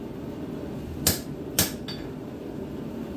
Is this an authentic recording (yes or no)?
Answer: yes